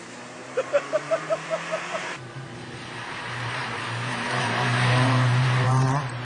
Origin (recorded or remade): remade